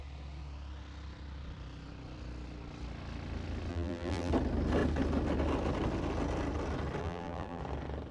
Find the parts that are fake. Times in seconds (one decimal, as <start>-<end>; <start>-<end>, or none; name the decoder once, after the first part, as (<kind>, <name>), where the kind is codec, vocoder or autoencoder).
3.7-4.3 (vocoder, BigVGAN v2); 7.0-7.6